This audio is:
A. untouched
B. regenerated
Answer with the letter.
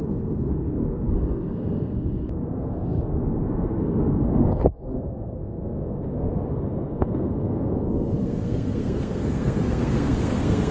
B